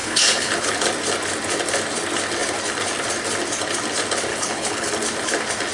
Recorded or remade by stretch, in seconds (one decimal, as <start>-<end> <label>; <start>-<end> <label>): 0.0-0.7 remade; 0.7-4.3 recorded; 4.3-4.9 remade; 4.9-5.7 recorded